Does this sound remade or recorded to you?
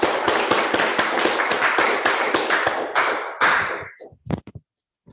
recorded